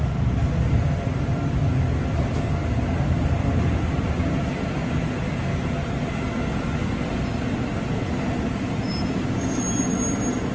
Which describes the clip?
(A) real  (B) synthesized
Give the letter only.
A